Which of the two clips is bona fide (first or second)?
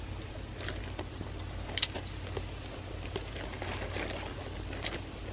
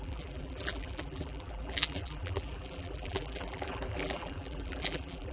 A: first